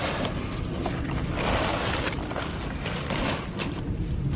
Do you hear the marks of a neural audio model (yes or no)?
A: no